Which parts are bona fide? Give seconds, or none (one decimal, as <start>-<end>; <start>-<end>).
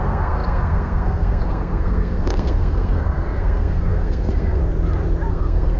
4.6-5.3